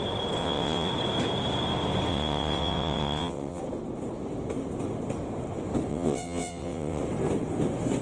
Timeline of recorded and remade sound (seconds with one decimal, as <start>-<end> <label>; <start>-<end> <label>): 0.0-0.4 recorded; 0.4-0.9 remade; 0.9-2.1 recorded; 2.1-3.6 remade; 3.6-5.9 recorded; 5.9-7.0 remade; 7.0-8.0 recorded